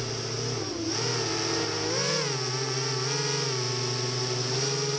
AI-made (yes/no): no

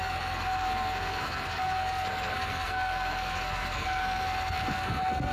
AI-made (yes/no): yes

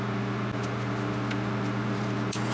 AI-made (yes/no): no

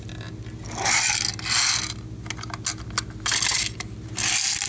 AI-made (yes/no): no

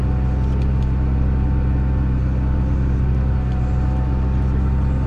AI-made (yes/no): no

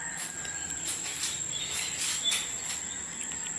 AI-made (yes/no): no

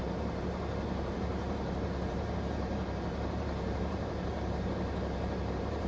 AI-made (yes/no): yes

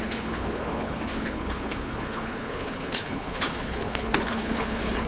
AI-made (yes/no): yes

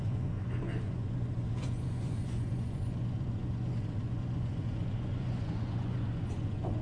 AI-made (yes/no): yes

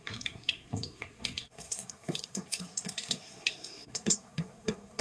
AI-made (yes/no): yes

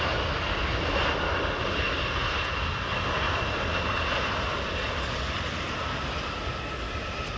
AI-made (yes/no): no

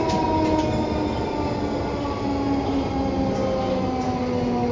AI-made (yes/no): no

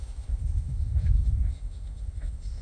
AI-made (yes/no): yes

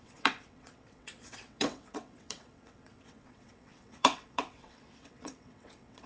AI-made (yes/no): yes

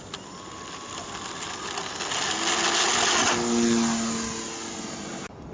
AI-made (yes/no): no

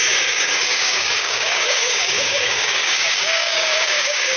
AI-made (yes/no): yes